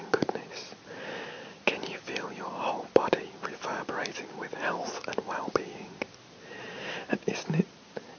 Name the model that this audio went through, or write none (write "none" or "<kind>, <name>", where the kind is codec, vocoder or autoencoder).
none